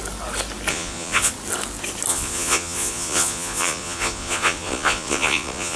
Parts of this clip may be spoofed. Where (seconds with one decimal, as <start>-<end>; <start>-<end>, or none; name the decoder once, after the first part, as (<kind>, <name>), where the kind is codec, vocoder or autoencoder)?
0.7-1.3 (vocoder, Vocos); 2.1-5.8